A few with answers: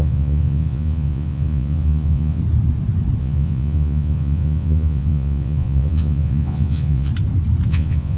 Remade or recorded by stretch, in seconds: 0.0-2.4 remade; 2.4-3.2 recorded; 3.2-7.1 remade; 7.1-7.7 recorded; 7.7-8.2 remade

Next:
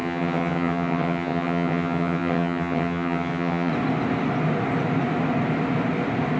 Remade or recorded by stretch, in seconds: 0.0-3.7 remade; 3.7-6.4 recorded

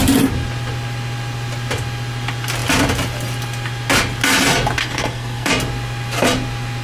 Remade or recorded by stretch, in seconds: 0.0-4.8 recorded; 4.8-5.5 remade; 5.5-6.8 recorded